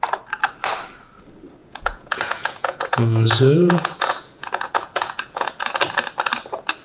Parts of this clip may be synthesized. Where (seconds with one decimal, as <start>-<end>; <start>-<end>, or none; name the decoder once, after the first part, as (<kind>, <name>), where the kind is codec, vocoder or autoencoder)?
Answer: 1.6-5.7 (vocoder, Vocos)

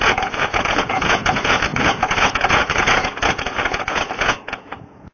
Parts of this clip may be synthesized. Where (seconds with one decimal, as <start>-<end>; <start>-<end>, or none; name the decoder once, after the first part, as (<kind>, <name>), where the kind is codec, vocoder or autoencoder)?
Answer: 0.0-5.1 (vocoder, Vocos)

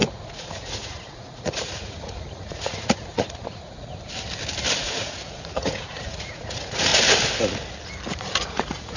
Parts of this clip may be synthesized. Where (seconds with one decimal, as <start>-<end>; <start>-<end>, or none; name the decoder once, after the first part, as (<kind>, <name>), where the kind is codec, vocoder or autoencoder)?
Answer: 0.0-3.9 (vocoder, Vocos); 4.8-6.9; 8.2-9.0

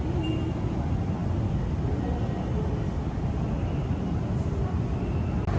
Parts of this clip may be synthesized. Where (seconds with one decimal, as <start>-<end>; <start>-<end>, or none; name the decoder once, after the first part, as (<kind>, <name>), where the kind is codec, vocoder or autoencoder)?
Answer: none

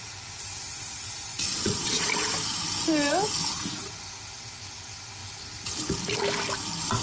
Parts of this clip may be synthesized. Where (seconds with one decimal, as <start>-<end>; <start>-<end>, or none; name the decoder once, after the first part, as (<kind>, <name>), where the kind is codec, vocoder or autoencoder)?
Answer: 1.3-2.0 (vocoder, Vocos)